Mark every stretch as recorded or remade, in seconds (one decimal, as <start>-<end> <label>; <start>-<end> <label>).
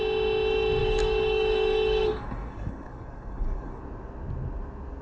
0.0-0.8 recorded; 0.8-3.8 remade; 3.8-5.0 recorded